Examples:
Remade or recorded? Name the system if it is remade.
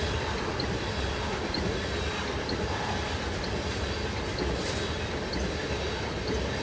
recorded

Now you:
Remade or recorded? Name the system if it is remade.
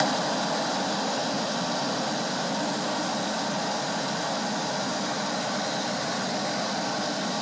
recorded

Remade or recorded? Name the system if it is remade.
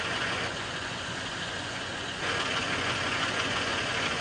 remade, vocoder, Vocos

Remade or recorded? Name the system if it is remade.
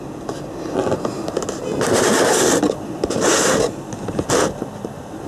recorded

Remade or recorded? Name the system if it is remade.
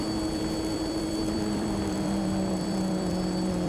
remade, vocoder, BigVGAN v2